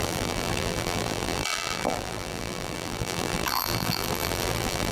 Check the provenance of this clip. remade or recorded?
remade